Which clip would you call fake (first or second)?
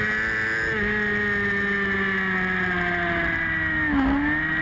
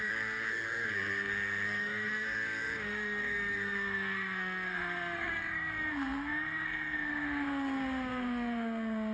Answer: second